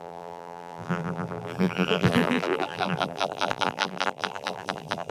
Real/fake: fake